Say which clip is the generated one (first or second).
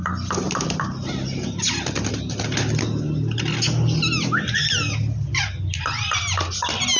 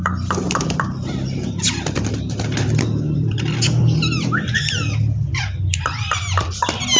second